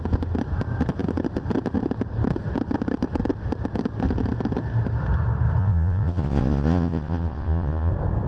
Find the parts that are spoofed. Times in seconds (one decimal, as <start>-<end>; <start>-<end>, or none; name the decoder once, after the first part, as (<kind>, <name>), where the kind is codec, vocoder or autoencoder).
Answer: 5.6-7.9 (vocoder, Vocos)